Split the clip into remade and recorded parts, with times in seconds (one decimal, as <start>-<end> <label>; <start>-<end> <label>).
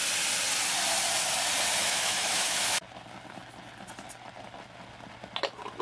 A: 0.0-1.8 recorded; 1.8-2.8 remade; 2.8-5.8 recorded